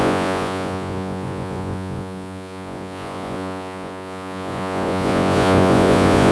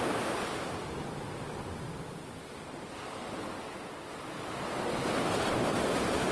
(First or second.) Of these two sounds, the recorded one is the second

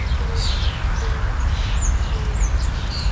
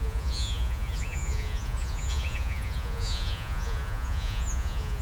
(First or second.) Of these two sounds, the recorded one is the first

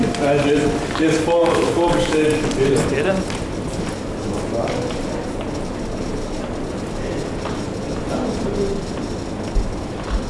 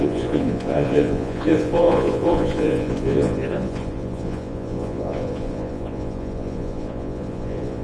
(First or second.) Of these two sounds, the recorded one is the first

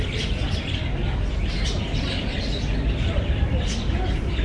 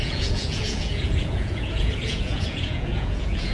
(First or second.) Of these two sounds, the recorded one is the first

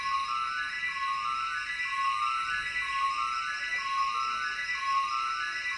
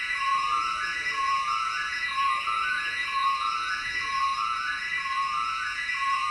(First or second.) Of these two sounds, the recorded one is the first